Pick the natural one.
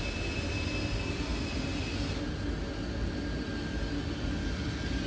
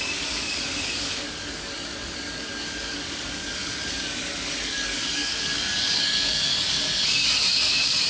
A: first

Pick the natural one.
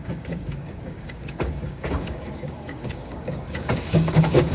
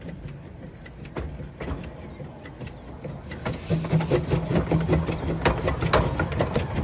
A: second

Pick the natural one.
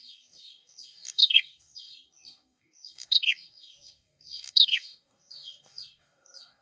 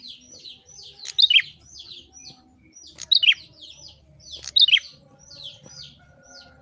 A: second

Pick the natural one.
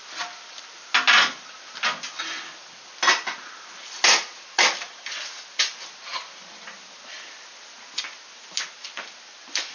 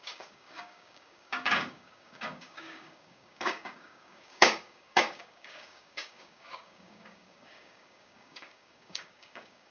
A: first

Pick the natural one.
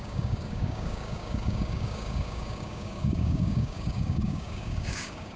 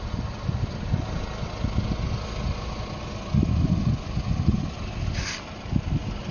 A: second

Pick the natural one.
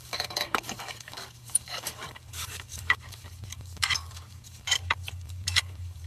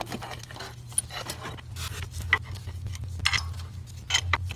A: second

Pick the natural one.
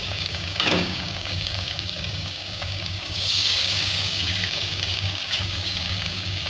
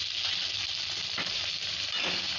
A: second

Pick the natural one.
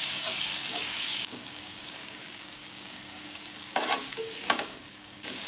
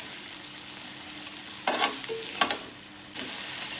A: second